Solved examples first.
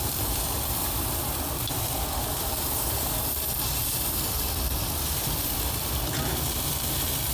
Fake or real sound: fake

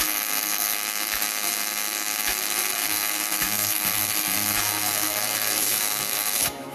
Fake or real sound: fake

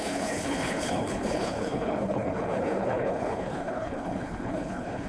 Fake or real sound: fake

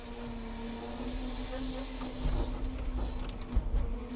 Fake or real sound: real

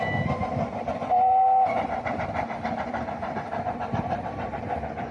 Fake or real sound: real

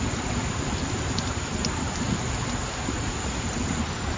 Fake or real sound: fake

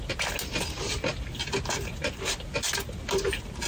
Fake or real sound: real